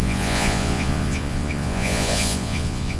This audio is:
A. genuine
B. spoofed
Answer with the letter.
B